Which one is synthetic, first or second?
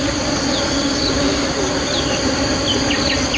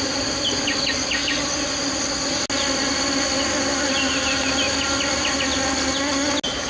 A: first